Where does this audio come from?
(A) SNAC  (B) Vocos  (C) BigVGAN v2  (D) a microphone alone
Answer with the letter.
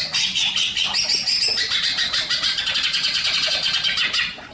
D